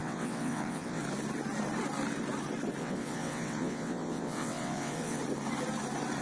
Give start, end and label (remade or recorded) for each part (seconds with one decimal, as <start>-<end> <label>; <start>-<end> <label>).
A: 0.0-1.0 remade; 1.0-2.8 recorded; 2.8-5.2 remade; 5.2-6.2 recorded